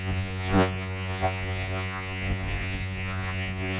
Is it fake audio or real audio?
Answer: fake